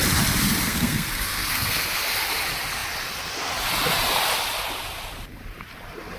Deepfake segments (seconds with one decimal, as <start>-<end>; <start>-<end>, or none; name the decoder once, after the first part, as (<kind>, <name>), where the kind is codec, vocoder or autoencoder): 0.6-2.0 (codec, SNAC)